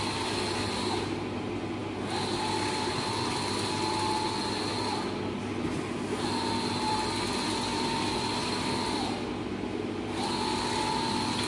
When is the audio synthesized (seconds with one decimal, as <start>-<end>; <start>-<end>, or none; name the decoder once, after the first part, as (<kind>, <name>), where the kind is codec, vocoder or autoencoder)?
none